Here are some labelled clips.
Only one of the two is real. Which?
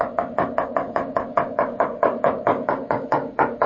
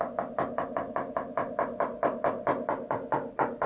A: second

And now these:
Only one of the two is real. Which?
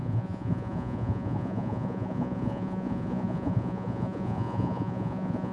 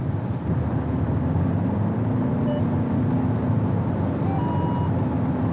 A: second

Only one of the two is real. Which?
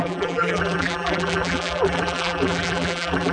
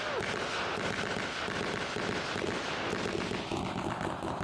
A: second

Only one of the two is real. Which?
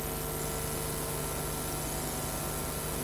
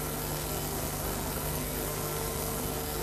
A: first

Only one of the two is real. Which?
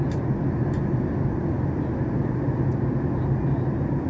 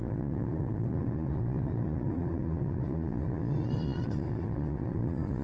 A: first